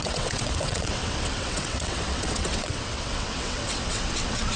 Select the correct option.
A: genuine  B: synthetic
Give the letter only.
B